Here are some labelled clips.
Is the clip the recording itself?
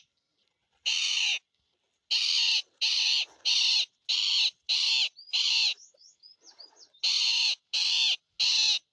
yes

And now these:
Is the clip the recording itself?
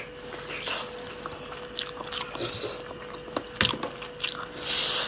yes